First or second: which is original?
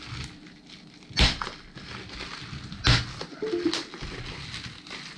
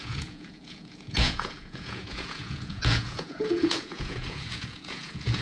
first